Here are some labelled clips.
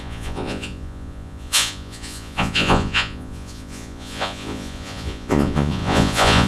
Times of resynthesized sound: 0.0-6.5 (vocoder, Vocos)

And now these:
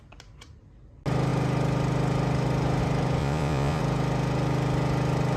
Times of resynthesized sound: 3.2-3.8 (vocoder, Vocos)

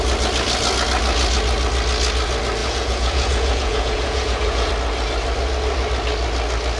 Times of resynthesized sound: 2.6-4.7 (vocoder, Vocos)

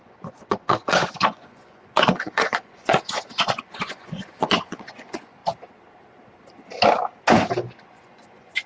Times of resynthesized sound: 0.0-5.4 (vocoder, Vocos); 7.8-8.7

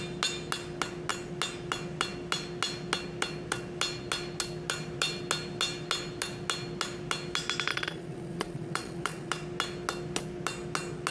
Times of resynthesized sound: 7.7-9.3 (vocoder, Vocos)

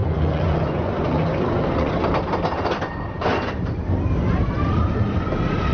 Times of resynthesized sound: 0.0-1.9 (vocoder, Vocos)